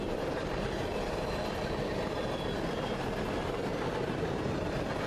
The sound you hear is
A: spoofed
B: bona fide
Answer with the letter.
B